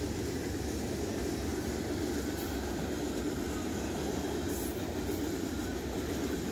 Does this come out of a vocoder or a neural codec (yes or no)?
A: no